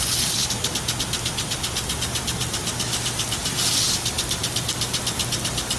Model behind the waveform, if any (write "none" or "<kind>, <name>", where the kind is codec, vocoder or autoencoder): none